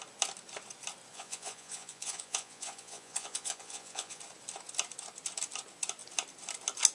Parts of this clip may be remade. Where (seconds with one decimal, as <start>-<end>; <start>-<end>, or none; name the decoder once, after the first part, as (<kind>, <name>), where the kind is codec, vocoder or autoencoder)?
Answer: 1.1-4.2 (vocoder, Vocos)